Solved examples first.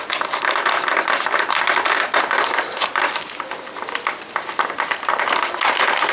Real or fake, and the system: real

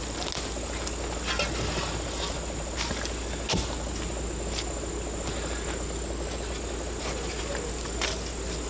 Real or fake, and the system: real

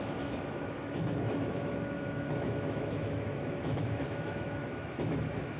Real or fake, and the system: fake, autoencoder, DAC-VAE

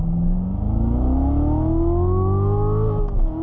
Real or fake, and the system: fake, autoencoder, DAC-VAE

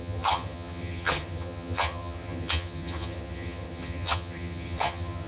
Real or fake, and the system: fake, vocoder, HiFi-GAN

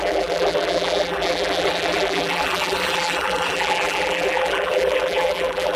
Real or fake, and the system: fake, vocoder, BigVGAN v2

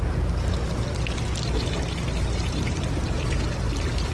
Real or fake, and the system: real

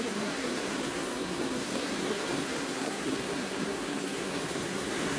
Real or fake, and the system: fake, codec, SNAC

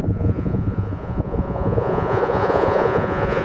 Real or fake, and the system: fake, vocoder, Vocos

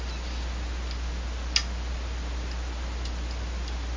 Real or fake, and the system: real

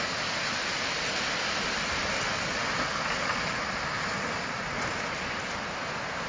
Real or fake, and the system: real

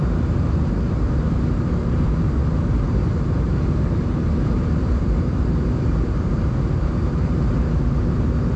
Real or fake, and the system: fake, vocoder, BigVGAN v2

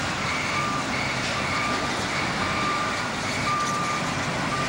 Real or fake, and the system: fake, vocoder, BigVGAN v2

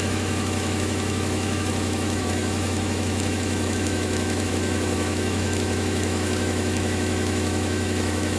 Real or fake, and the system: fake, autoencoder, DAC-VAE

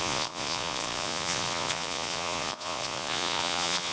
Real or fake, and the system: fake, vocoder, Vocos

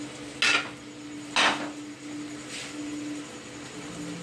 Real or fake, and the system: real